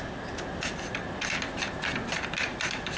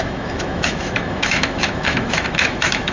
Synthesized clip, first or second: second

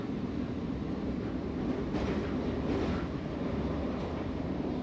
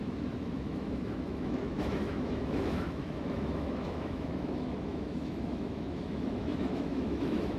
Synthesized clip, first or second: second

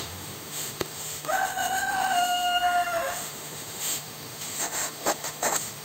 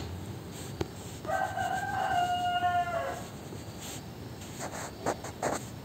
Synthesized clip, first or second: first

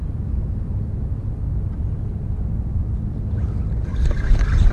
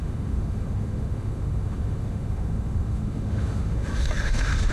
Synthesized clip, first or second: second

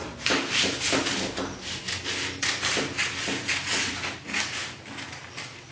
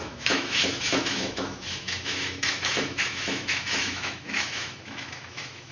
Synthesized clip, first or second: second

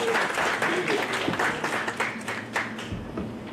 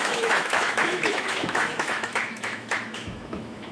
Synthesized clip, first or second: second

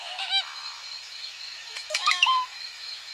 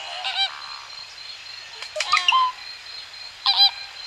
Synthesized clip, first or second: first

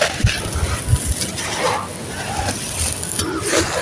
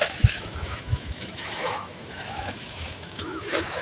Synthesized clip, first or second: second